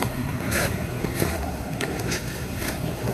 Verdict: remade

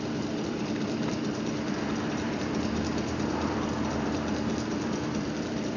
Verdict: remade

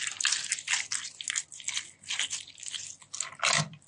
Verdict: recorded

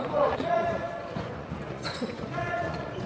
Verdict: remade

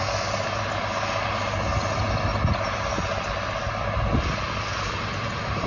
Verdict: recorded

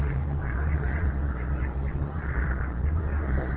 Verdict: remade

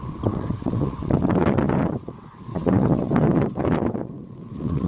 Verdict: remade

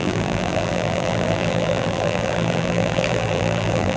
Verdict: remade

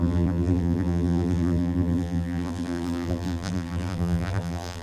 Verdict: remade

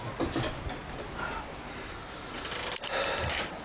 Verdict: recorded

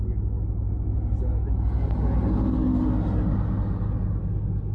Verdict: recorded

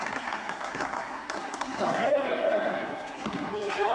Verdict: remade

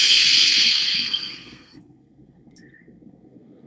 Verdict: remade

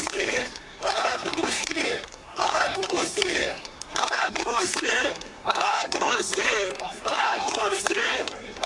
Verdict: remade